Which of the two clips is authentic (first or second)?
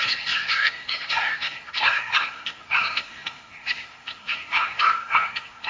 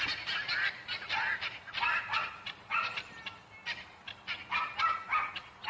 second